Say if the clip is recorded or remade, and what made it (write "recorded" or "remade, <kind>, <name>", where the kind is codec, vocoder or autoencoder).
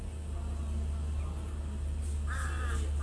recorded